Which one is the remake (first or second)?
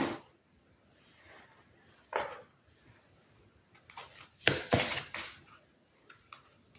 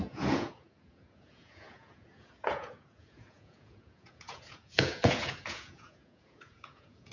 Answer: second